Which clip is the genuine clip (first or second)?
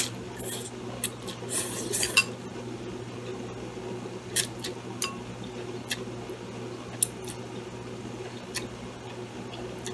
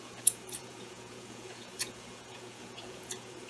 first